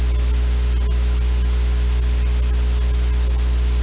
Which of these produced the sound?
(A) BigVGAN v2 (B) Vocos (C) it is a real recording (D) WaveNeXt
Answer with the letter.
C